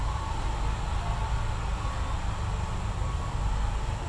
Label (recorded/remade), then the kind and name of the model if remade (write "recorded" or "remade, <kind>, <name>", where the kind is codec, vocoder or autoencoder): recorded